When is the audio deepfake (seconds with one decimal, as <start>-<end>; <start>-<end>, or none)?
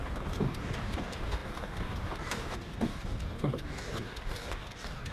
0.0-5.1